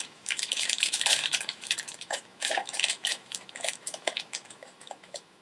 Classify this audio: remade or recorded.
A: remade